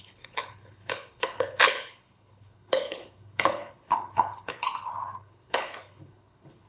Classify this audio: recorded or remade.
remade